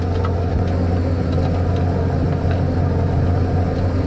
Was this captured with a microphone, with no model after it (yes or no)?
yes